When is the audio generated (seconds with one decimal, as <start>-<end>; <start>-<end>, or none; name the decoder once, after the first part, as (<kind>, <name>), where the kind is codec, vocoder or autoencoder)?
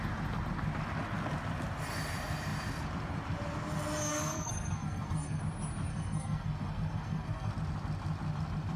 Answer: 4.1-5.4 (codec, SNAC); 5.9-7.5